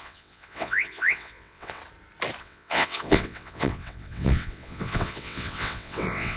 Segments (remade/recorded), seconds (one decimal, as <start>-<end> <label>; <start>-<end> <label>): 0.0-1.8 remade; 1.8-2.4 recorded; 2.4-6.4 remade